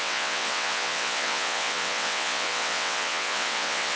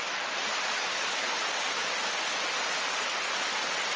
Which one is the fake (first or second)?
first